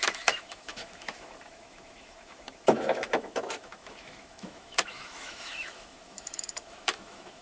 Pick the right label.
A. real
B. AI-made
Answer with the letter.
B